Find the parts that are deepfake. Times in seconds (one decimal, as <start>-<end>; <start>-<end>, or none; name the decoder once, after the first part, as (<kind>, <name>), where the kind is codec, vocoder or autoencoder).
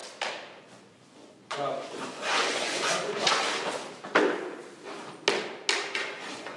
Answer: 0.6-3.4 (vocoder, Vocos); 5.9-6.6